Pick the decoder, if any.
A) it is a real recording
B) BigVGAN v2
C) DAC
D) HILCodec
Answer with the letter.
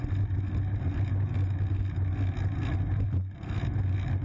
A